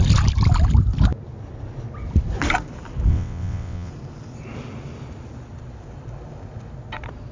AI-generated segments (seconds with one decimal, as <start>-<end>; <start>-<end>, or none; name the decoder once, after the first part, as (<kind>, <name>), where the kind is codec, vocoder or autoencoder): 3.1-3.9 (vocoder, WaveNeXt)